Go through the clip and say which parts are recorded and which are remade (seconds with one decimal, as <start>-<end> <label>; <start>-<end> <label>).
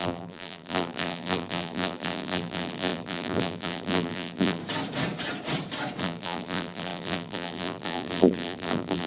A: 0.0-4.6 remade; 4.6-6.0 recorded; 6.0-9.1 remade